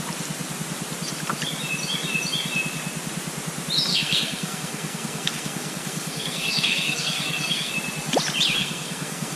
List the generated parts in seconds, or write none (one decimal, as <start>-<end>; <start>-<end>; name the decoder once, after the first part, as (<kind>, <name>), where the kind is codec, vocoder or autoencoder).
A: 3.9-7.7 (codec, SNAC); 8.6-9.4